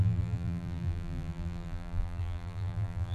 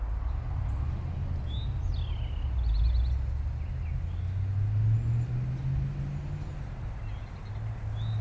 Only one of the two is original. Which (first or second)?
second